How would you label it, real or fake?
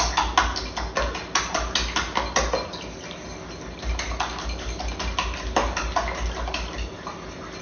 real